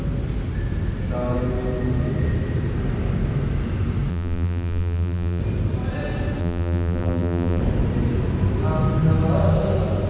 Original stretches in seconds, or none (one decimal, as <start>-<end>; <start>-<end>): 0.0-4.1; 5.4-6.4; 7.6-10.1